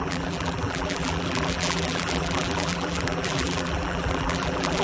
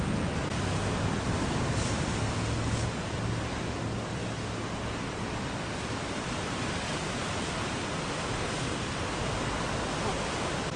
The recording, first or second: second